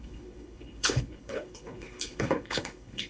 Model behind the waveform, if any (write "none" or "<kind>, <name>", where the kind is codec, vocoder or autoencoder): codec, HILCodec